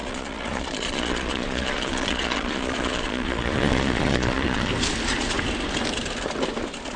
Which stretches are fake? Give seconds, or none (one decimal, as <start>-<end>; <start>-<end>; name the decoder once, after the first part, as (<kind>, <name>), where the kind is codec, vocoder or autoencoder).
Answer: 0.0-4.7 (vocoder, Vocos)